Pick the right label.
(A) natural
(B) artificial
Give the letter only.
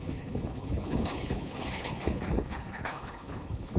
B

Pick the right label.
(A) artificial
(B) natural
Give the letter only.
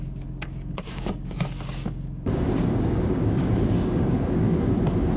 A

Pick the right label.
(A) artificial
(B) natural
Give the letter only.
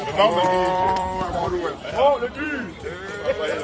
A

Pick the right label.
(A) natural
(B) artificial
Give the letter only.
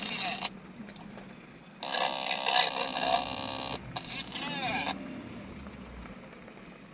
A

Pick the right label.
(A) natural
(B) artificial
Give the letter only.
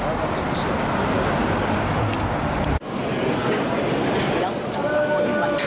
A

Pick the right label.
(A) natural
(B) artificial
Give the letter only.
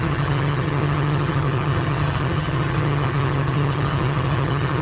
B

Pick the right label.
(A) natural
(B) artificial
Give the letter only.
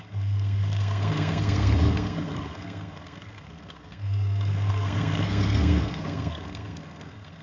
B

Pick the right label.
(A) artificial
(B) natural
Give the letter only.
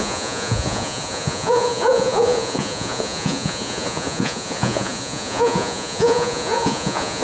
A